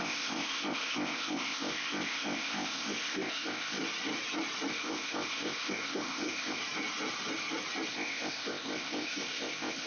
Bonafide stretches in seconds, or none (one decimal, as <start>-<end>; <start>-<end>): 3.8-4.7; 6.6-7.9